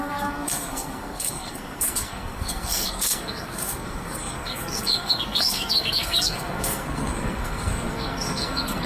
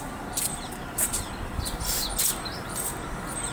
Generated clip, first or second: first